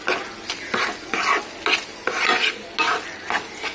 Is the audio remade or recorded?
recorded